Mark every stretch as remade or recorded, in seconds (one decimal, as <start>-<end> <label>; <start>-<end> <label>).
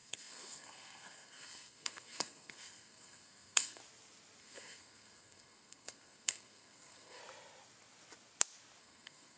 0.0-3.8 remade; 3.8-4.4 recorded; 4.4-7.2 remade; 7.2-8.8 recorded; 8.8-9.4 remade